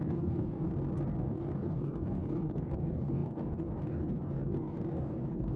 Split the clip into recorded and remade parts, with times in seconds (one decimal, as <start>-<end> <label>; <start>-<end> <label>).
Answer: 0.0-0.7 remade; 0.7-1.2 recorded; 1.2-5.6 remade